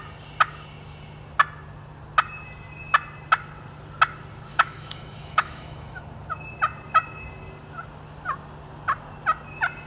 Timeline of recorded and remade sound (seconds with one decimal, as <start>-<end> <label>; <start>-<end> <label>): 0.0-4.5 recorded; 4.5-6.0 remade; 6.0-9.9 recorded